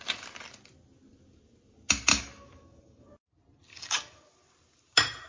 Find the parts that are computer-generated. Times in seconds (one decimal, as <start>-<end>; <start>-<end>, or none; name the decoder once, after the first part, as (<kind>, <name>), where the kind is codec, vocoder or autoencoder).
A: 2.1-3.1 (codec, DAC); 3.7-4.3